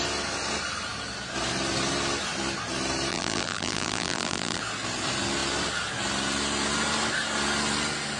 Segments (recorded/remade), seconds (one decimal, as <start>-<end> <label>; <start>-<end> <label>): 0.0-3.1 recorded; 3.1-4.6 remade; 4.6-8.2 recorded